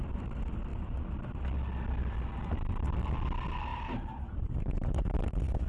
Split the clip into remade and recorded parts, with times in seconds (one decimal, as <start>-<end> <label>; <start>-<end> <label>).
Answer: 0.0-3.7 recorded; 3.7-5.3 remade; 5.3-5.7 recorded